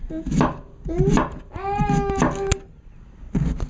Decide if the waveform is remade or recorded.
recorded